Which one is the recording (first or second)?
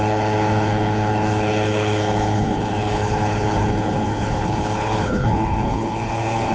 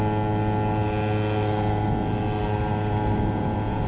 second